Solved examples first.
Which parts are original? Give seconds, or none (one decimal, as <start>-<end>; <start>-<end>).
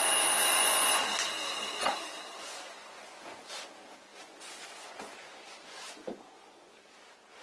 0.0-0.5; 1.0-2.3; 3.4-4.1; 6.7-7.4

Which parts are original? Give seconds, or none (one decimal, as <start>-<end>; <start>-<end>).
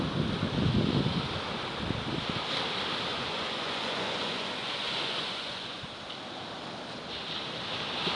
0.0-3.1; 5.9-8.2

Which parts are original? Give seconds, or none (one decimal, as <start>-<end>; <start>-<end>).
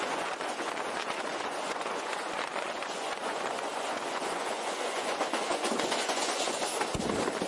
6.6-7.5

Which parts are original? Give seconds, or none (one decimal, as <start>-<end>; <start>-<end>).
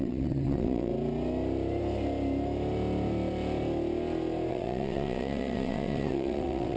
0.9-4.5